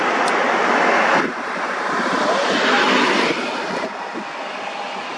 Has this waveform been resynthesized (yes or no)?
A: no